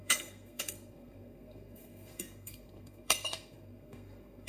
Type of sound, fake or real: fake